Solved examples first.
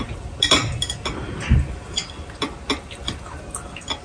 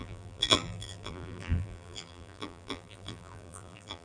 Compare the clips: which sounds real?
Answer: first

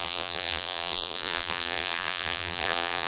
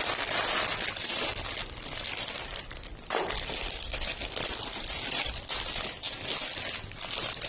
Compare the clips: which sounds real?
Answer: second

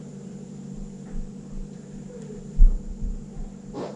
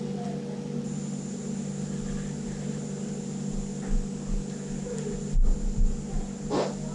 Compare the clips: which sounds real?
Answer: second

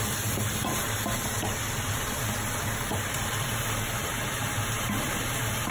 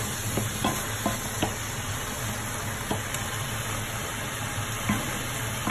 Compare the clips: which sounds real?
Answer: second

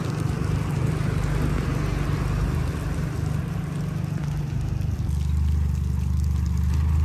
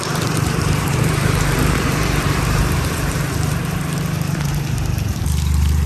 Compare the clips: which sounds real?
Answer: first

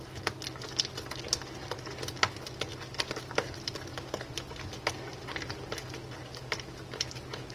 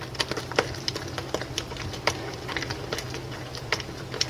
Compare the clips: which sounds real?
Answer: first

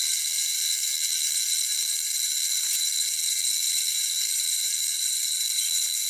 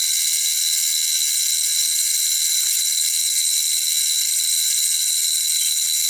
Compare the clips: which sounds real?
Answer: second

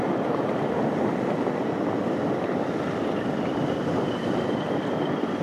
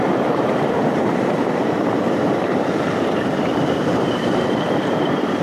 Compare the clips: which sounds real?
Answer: first